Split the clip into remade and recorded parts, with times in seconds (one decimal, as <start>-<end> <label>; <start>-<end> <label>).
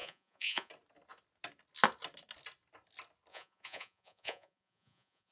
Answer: 0.0-0.7 remade; 0.7-3.3 recorded; 3.3-5.3 remade